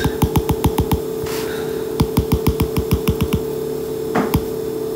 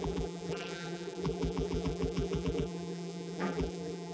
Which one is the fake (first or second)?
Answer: second